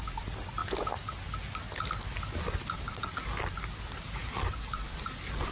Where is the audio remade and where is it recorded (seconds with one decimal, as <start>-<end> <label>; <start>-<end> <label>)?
0.0-0.6 remade; 0.6-3.0 recorded; 3.0-5.5 remade